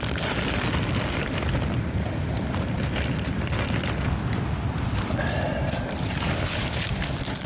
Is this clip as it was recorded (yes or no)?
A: no